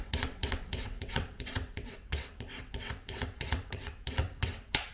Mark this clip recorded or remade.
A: remade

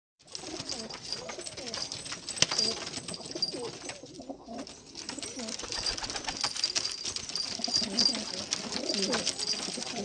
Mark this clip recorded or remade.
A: recorded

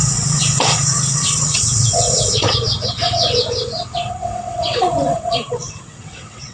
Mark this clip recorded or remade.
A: remade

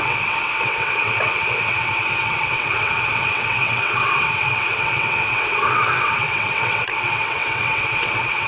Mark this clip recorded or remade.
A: remade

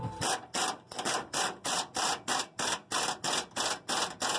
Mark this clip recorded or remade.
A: recorded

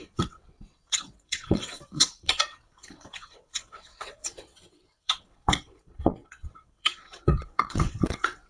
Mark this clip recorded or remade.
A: remade